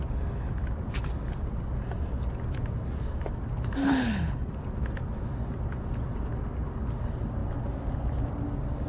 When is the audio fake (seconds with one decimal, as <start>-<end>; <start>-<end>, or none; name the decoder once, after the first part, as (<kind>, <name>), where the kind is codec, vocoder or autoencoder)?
3.8-4.5 (codec, HILCodec)